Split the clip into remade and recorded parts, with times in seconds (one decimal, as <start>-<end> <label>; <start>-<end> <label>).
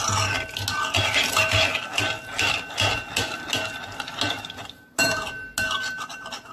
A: 0.0-6.5 recorded